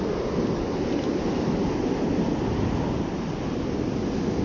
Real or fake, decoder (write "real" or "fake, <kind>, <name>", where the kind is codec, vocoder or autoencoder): real